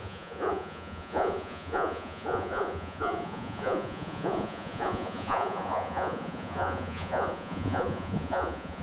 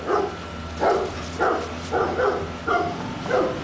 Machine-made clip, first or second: first